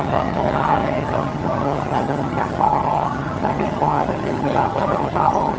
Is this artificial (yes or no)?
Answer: yes